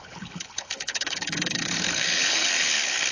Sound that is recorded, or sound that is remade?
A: remade